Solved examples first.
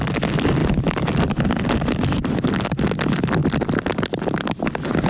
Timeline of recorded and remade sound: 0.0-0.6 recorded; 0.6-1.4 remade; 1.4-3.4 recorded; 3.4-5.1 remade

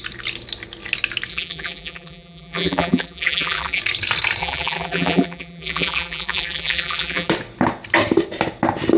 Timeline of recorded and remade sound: 0.0-1.3 recorded; 1.3-3.8 remade; 3.8-4.4 recorded; 4.4-7.3 remade; 7.3-9.0 recorded